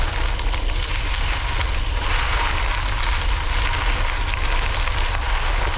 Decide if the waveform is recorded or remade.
recorded